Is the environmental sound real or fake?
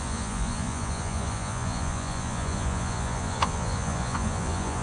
fake